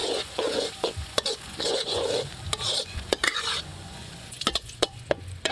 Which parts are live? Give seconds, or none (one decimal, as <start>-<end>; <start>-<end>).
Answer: 2.3-2.8